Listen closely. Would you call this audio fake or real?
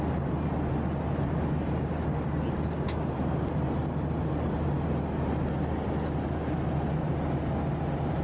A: real